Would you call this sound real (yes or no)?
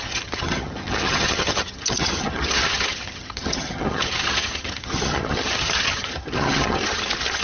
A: no